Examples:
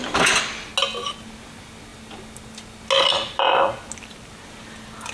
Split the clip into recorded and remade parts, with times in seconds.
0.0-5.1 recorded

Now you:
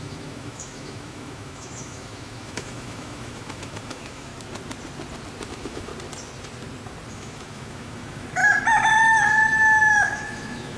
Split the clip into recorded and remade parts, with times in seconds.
0.0-4.3 remade; 4.3-5.5 recorded; 5.5-5.9 remade; 5.9-7.1 recorded; 7.1-8.4 remade; 8.4-9.9 recorded; 9.9-10.8 remade

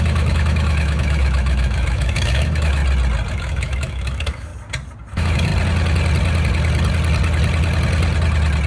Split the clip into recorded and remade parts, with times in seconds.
0.0-2.8 remade; 2.8-3.3 recorded; 3.3-4.5 remade; 4.5-5.1 recorded; 5.1-5.5 remade; 5.5-8.7 recorded

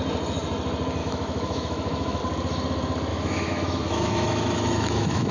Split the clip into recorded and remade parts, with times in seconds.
0.0-1.0 recorded; 1.0-2.2 remade; 2.2-3.1 recorded; 3.1-5.3 remade

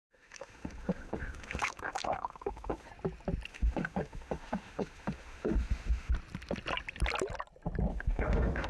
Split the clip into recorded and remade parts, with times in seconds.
0.0-2.9 remade; 2.9-3.5 recorded; 3.5-6.1 remade; 6.1-7.9 recorded; 7.9-8.7 remade

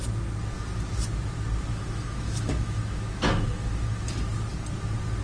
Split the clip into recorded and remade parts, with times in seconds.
0.0-1.7 recorded; 1.7-4.1 remade; 4.1-5.2 recorded

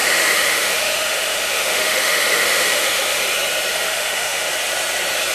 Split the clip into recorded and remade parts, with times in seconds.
0.0-3.2 remade; 3.2-3.7 recorded; 3.7-4.5 remade; 4.5-5.3 recorded

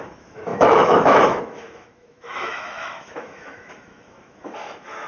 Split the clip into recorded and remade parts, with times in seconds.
0.0-5.1 remade